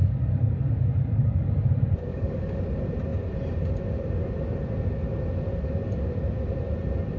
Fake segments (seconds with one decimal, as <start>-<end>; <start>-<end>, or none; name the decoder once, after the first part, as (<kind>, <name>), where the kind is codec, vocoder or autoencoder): 0.0-1.7 (codec, DAC); 2.1-2.6